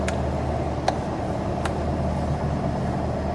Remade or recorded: recorded